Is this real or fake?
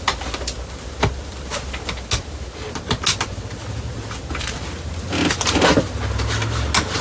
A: real